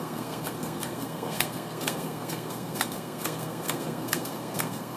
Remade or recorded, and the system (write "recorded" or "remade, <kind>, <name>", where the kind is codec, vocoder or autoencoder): remade, codec, SNAC